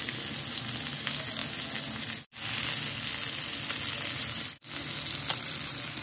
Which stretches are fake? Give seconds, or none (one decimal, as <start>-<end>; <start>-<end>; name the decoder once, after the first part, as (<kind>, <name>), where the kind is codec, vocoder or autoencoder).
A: none